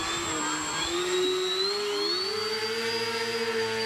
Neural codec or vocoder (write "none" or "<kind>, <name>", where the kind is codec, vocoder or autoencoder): none